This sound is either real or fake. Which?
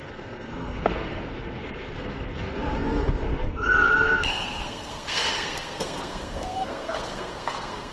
fake